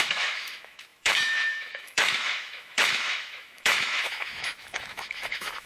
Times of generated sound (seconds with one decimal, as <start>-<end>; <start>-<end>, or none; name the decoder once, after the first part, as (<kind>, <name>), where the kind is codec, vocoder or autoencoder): 0.0-5.7 (autoencoder, DAC-VAE)